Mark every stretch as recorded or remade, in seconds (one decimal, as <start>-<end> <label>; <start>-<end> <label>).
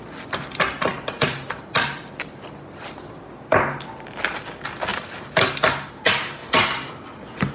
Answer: 0.0-0.9 recorded; 0.9-3.3 remade; 3.3-4.9 recorded; 4.9-5.5 remade; 5.5-6.4 recorded; 6.4-6.9 remade; 6.9-7.5 recorded